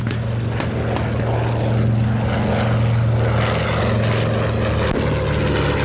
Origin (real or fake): real